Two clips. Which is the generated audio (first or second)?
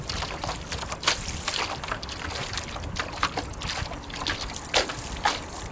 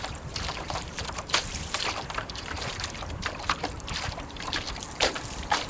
second